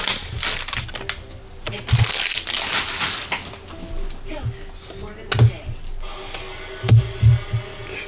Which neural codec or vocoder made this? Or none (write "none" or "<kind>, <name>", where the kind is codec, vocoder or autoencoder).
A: none